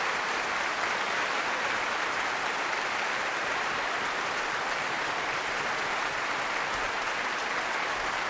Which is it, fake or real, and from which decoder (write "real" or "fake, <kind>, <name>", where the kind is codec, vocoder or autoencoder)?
fake, vocoder, BigVGAN v2